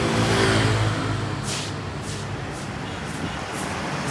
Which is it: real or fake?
real